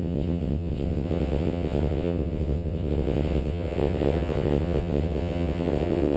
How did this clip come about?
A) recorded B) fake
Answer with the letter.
B